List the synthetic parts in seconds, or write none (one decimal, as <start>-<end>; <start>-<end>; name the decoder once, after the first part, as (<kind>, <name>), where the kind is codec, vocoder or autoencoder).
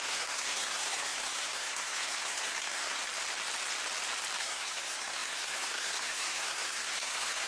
0.0-3.0 (codec, SNAC); 4.4-7.5